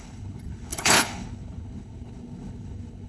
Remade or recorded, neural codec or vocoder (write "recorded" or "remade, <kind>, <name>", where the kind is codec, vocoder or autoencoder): remade, codec, HILCodec